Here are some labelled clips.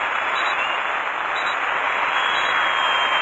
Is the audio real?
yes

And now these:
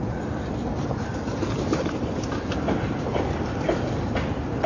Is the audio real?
yes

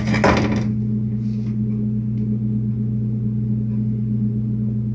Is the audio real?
yes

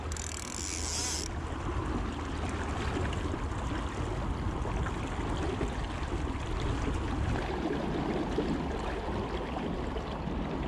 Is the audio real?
yes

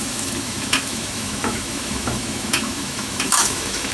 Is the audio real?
no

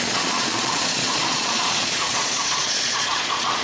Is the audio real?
no